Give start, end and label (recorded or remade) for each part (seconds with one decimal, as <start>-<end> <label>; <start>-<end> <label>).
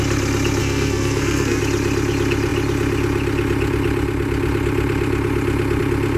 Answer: 0.0-0.6 recorded; 0.6-1.6 remade; 1.6-6.2 recorded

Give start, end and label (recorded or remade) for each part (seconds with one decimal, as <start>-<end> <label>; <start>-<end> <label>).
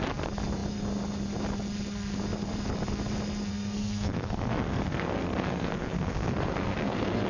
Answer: 0.0-3.5 recorded; 3.5-7.3 remade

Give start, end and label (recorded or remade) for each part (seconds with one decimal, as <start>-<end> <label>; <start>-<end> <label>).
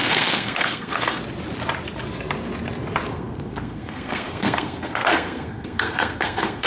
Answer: 0.0-1.2 remade; 1.2-3.1 recorded; 3.1-6.7 remade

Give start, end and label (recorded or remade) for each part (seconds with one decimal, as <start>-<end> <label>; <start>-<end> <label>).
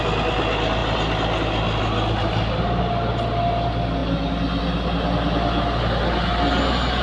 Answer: 0.0-7.0 recorded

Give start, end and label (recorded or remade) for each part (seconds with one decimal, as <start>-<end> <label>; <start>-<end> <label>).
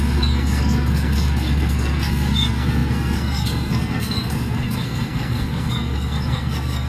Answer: 0.0-6.9 remade